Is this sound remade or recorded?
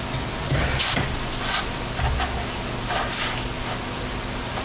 recorded